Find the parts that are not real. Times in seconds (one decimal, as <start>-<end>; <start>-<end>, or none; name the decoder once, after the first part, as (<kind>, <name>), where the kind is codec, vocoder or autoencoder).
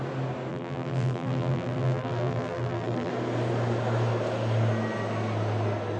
0.5-3.1 (vocoder, BigVGAN v2)